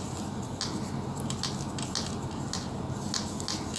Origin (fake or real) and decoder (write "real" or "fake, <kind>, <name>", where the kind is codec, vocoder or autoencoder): real